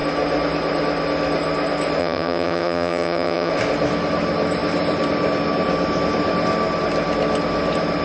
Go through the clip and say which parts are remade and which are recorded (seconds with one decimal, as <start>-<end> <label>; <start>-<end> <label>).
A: 0.0-2.0 recorded; 2.0-3.5 remade; 3.5-8.0 recorded